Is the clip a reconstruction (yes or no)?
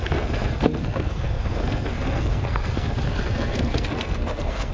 yes